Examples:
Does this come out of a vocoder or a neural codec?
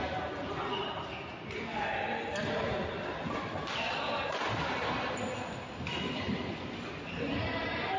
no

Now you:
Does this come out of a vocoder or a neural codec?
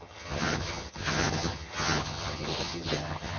yes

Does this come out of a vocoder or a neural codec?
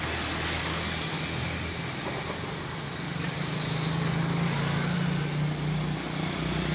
no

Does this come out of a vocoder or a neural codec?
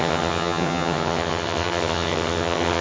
yes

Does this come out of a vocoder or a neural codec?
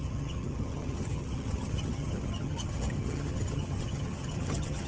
yes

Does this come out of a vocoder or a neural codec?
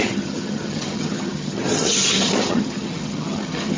yes